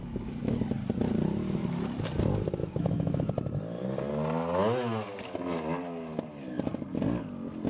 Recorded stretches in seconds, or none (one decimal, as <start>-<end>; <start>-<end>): 0.0-2.6; 3.3-7.7